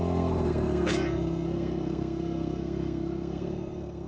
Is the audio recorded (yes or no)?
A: no